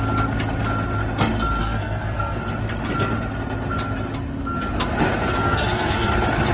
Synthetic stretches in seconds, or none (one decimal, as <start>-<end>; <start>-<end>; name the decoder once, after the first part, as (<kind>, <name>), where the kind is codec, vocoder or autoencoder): 1.6-2.4 (codec, SNAC); 5.4-6.1